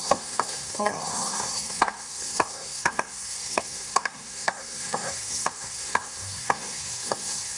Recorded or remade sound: remade